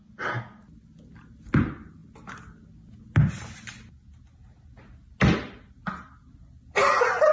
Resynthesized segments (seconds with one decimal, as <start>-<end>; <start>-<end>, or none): none